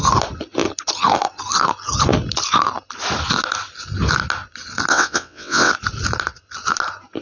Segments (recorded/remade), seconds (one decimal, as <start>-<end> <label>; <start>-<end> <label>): 0.0-4.9 recorded; 4.9-5.7 remade; 5.7-7.2 recorded